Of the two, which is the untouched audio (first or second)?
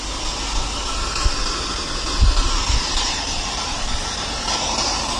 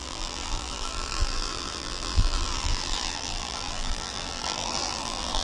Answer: first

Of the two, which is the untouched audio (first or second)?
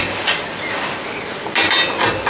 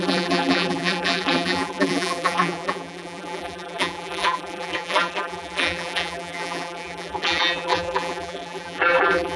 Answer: first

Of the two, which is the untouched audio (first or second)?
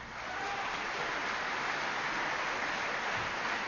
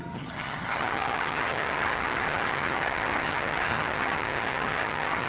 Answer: first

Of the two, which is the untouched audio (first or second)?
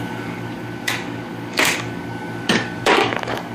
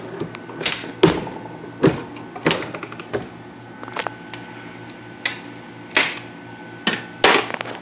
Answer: second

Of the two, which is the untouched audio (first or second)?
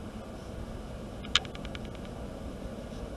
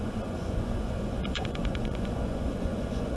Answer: first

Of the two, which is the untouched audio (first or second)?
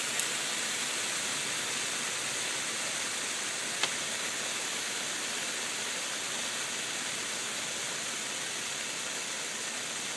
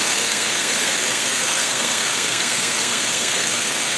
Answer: first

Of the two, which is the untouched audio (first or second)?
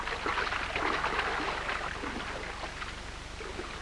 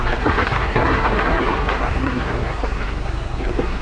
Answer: first